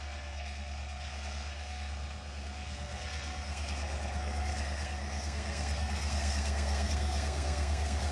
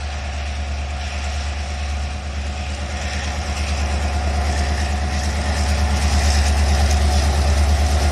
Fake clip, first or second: first